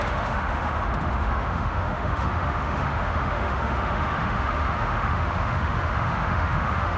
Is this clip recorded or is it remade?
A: remade